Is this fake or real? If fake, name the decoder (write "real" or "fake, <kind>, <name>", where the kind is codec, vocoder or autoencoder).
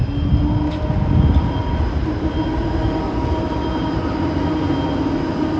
real